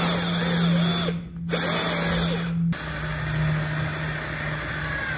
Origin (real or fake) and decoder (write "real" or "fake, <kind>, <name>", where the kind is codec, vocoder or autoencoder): real